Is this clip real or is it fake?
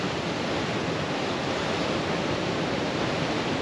fake